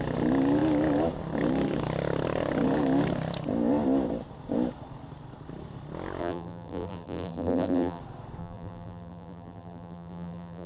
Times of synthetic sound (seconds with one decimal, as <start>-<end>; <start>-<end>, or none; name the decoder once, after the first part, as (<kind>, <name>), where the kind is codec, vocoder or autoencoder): 6.2-8.0 (vocoder, BigVGAN v2); 8.4-10.7